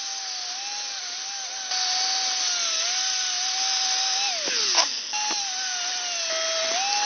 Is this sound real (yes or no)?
yes